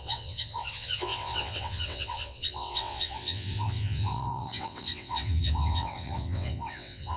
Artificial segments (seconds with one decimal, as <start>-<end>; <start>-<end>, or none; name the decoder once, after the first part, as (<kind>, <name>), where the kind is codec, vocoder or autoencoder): 0.0-7.2 (vocoder, WaveNeXt)